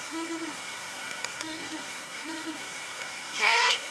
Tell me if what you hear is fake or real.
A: fake